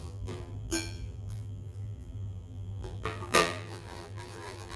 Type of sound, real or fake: fake